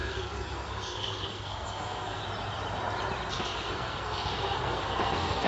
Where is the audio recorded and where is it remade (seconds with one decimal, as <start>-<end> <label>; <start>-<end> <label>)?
0.0-2.2 remade; 2.2-3.3 recorded; 3.3-5.5 remade

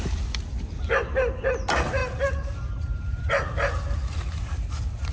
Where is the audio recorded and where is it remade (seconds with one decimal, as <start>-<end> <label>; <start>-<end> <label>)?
0.0-5.1 recorded

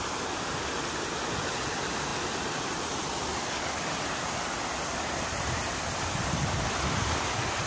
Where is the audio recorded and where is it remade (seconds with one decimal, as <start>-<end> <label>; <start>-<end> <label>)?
0.0-2.1 recorded; 2.1-6.7 remade; 6.7-7.7 recorded

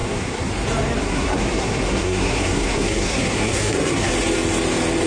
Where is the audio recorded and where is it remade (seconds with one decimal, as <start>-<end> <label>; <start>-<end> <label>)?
0.0-0.5 remade; 0.5-1.0 recorded; 1.0-4.1 remade; 4.1-5.1 recorded

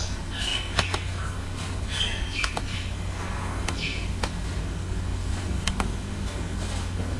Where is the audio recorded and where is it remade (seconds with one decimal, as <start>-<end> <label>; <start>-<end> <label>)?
0.0-7.2 remade

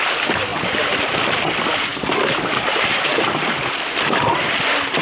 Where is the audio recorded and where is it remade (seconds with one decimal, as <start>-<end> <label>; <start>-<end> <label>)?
0.0-1.9 recorded; 1.9-3.1 remade; 3.1-5.0 recorded

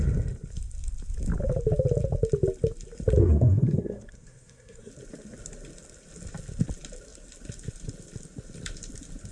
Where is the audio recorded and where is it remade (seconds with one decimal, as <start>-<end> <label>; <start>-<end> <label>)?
0.0-3.2 recorded; 3.2-4.9 remade; 4.9-9.3 recorded

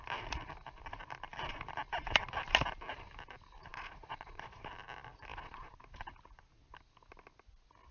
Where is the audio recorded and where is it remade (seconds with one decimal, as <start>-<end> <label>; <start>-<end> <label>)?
0.0-3.7 recorded; 3.7-4.6 remade; 4.6-5.3 recorded; 5.3-5.8 remade; 5.8-7.9 recorded